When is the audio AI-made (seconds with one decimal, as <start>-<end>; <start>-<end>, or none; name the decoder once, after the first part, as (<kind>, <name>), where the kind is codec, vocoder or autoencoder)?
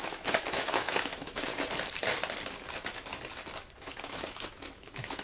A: 0.0-1.5 (autoencoder, DAC-VAE); 3.8-5.2